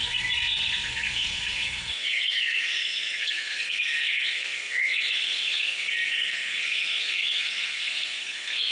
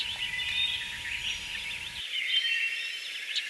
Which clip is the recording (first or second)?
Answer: second